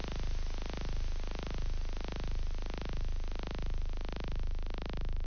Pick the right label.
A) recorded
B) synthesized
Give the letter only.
A